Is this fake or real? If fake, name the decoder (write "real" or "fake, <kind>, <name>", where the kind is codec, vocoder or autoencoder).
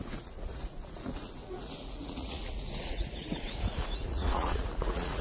fake, vocoder, Vocos